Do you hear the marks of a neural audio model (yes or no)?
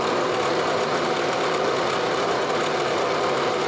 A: yes